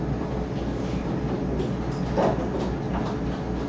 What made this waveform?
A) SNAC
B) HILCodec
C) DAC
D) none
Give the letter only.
D